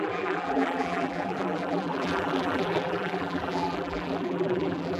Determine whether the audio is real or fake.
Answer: fake